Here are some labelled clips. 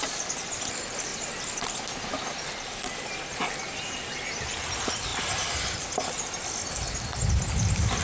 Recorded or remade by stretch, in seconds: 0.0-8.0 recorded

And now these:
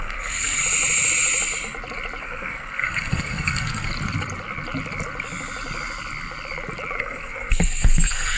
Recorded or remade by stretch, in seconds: 0.0-0.6 remade; 0.6-2.2 recorded; 2.2-3.9 remade; 3.9-7.0 recorded; 7.0-8.4 remade

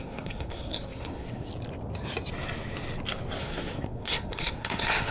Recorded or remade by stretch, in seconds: 0.0-1.5 remade; 1.5-3.4 recorded; 3.4-5.1 remade